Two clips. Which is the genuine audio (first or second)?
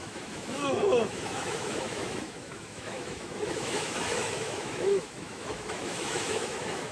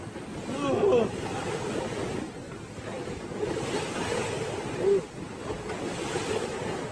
second